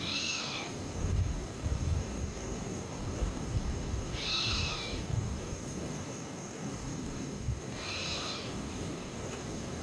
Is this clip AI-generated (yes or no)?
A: yes